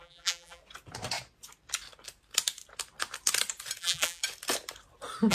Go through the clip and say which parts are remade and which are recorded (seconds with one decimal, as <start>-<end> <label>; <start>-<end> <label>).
0.0-0.6 remade; 0.6-3.8 recorded; 3.8-4.2 remade; 4.2-5.3 recorded

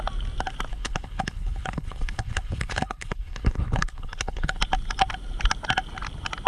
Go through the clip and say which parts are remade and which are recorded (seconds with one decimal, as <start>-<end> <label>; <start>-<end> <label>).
0.0-0.7 recorded; 0.7-4.6 remade; 4.6-6.5 recorded

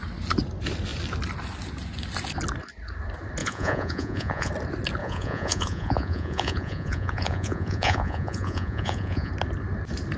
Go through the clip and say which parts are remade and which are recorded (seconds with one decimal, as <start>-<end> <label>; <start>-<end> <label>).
0.0-3.4 recorded; 3.4-4.5 remade; 4.5-5.0 recorded; 5.0-9.3 remade; 9.3-10.2 recorded